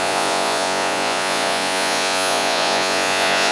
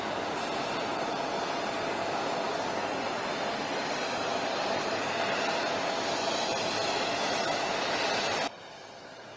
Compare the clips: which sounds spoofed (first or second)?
first